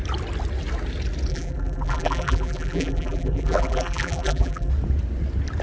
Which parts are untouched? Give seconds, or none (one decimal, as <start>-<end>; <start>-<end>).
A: 0.0-1.3; 4.7-5.6